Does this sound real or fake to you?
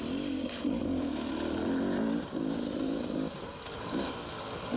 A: real